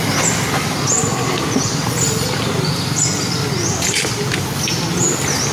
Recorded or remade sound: recorded